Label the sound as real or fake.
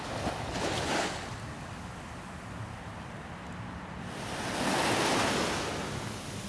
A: real